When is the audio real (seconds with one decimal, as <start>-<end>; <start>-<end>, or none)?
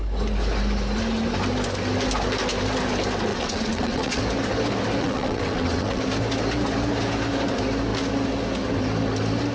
0.0-3.3; 4.2-5.0; 6.0-9.5